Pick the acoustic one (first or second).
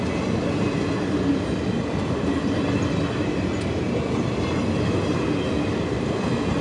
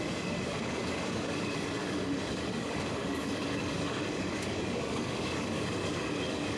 first